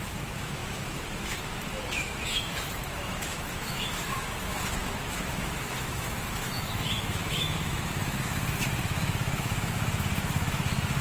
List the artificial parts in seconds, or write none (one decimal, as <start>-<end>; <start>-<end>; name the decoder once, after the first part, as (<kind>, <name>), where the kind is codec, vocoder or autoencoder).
0.0-11.0 (autoencoder, DAC-VAE)